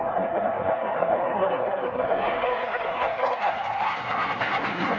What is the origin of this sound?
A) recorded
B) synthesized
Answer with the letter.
B